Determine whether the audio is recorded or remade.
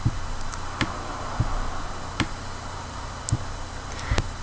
recorded